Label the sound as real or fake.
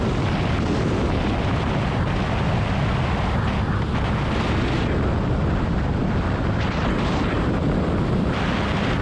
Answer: real